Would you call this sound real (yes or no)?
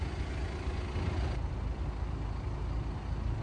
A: yes